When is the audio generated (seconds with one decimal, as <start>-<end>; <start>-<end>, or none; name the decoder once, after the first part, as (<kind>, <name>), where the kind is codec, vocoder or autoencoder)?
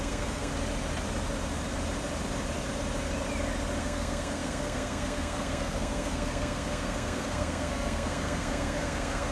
0.0-0.5 (codec, SNAC); 3.8-9.3